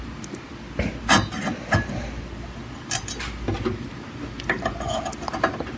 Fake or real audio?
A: real